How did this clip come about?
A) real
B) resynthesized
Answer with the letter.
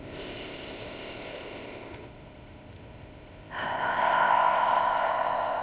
B